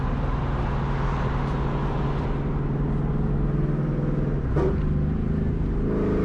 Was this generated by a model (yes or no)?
no